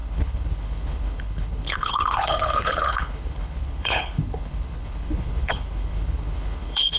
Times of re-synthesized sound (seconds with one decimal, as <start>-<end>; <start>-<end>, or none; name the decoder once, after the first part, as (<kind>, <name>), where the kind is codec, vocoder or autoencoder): 0.0-7.0 (codec, HILCodec)